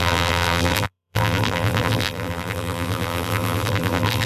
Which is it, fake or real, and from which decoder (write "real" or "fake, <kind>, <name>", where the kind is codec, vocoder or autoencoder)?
fake, vocoder, BigVGAN v2